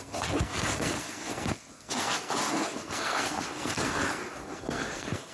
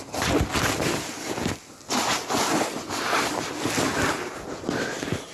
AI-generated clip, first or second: first